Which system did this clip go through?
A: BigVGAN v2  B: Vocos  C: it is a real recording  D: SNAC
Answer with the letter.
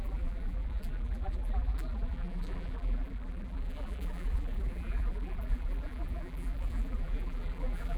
A